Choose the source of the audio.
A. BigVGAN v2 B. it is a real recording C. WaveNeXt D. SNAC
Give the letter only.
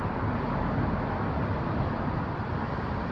B